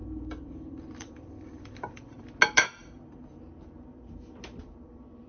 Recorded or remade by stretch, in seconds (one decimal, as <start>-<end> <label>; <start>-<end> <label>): 0.0-2.2 remade; 2.2-2.8 recorded; 2.8-3.4 remade; 3.4-5.3 recorded